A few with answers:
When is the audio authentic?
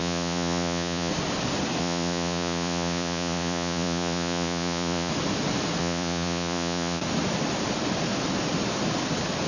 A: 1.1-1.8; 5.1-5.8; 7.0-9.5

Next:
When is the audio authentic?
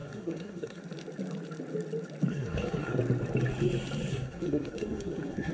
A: 0.8-2.3; 3.0-4.1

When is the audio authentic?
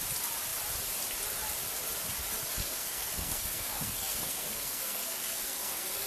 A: 0.0-2.6